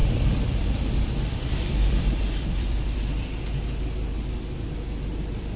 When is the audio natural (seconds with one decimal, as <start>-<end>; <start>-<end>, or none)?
3.4-5.6